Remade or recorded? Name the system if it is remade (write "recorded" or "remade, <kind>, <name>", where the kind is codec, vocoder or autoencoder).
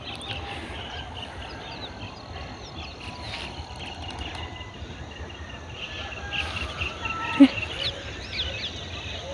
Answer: recorded